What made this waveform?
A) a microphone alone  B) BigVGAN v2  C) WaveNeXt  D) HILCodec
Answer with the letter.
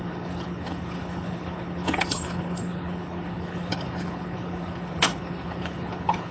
D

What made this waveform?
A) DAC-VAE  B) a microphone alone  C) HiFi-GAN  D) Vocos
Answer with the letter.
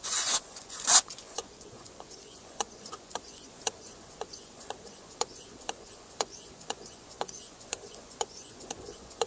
D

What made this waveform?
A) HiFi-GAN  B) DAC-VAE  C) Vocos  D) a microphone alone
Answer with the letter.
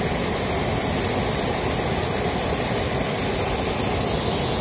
D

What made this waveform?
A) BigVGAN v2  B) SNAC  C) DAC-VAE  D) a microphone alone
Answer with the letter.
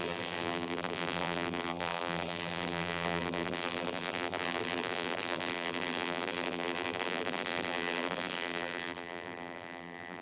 A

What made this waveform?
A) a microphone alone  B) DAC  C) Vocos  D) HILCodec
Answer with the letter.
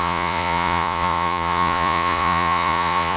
C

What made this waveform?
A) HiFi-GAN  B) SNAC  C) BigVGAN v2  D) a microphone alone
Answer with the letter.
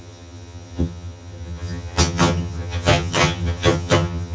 A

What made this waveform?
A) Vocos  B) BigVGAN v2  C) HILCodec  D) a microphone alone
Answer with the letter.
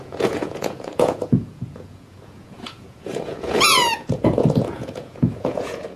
A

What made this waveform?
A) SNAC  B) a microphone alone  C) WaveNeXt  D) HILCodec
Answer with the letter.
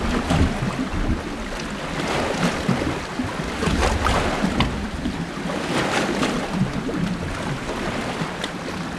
B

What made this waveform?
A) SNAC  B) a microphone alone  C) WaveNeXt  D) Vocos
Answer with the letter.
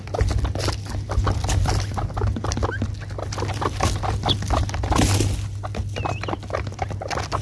B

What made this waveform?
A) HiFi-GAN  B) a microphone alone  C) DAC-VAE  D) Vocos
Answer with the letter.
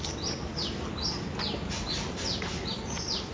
B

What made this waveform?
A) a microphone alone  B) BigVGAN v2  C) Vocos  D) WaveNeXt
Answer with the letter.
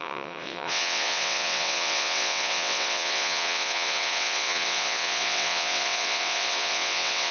D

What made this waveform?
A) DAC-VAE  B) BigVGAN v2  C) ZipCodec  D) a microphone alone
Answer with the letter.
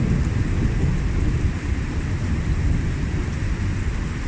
D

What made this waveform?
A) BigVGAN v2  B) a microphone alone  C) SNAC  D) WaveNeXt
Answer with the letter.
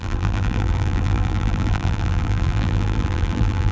A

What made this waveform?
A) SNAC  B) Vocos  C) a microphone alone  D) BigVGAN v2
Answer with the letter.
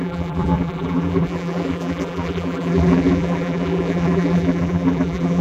D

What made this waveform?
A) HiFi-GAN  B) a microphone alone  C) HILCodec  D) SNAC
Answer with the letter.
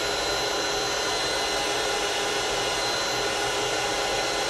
B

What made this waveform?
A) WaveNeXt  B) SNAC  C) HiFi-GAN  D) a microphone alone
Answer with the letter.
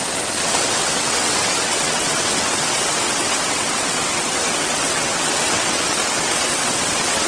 A